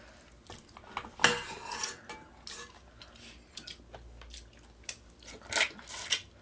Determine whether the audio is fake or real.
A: real